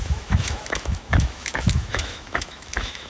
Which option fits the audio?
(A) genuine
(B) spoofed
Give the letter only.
B